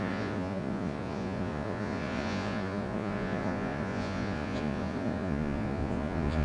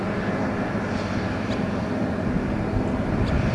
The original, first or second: second